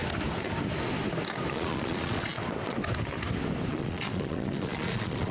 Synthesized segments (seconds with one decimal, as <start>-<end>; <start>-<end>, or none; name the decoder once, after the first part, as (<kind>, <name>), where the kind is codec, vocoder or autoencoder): 1.5-2.3 (vocoder, Vocos); 3.7-5.3